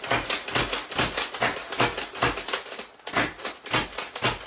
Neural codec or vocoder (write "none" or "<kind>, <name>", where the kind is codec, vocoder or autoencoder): none